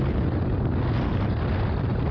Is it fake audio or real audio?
real